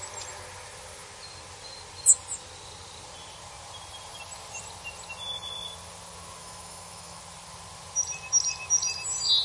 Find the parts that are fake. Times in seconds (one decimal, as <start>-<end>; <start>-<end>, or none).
6.4-7.2